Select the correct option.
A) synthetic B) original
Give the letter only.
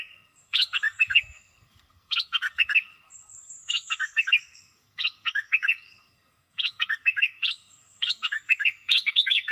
A